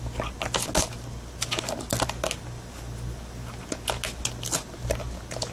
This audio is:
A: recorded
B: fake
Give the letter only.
A